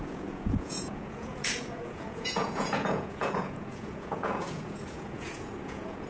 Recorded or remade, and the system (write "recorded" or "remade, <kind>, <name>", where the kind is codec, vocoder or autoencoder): remade, vocoder, Vocos